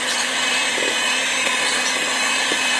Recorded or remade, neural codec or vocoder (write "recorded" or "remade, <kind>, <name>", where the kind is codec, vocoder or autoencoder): recorded